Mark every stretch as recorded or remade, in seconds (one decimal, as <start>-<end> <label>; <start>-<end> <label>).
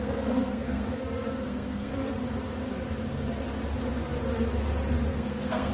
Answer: 0.0-1.9 remade; 1.9-5.1 recorded; 5.1-5.7 remade